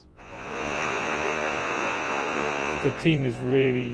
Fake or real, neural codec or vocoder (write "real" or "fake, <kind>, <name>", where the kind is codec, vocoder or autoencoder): fake, vocoder, Vocos